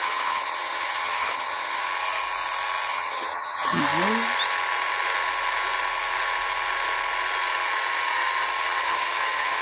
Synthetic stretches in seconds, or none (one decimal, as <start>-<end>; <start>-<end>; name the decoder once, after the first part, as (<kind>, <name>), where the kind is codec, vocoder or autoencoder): 0.0-1.8 (vocoder, HiFi-GAN); 2.9-3.8; 8.8-9.6